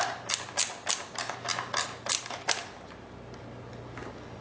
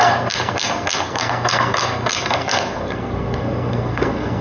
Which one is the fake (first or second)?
second